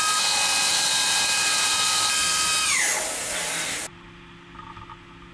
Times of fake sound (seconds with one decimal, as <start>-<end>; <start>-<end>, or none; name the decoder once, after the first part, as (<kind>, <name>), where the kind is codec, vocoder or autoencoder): 0.7-3.9 (vocoder, BigVGAN v2)